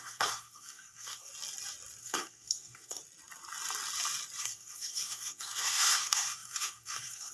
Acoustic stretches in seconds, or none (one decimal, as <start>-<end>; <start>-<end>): 1.3-2.0; 3.0-4.4